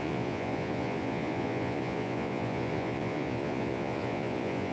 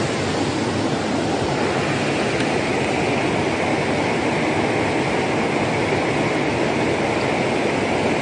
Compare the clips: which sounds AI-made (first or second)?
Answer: first